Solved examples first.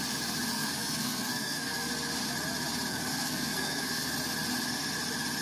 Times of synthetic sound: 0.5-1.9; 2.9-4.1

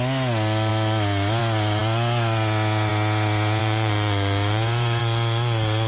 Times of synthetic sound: 3.6-5.0

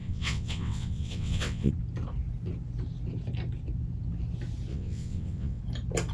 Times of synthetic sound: 0.0-1.7; 4.7-5.6

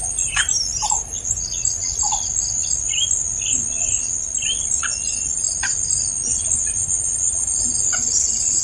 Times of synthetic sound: none

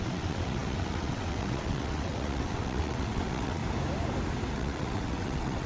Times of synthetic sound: 0.0-3.6; 4.5-5.7

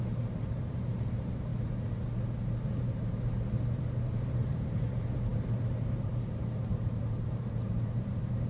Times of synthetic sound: 0.0-1.5; 2.7-8.5

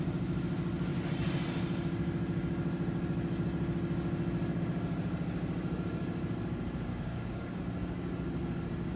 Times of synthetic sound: 6.9-7.6